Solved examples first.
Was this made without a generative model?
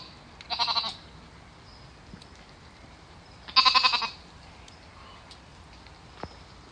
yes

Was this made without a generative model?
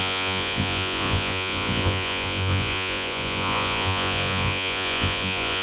no